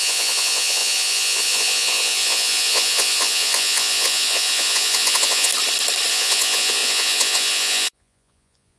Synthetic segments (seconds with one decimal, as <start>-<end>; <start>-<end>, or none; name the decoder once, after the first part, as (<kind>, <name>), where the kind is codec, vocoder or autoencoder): 0.0-5.5 (vocoder, Vocos); 6.1-8.8